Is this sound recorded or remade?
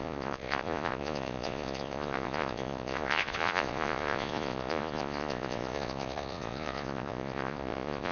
remade